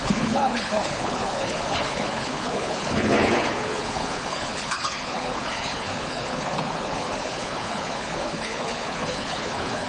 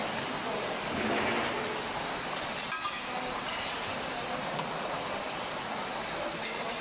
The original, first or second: second